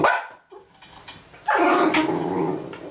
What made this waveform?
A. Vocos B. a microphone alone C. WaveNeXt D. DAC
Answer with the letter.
B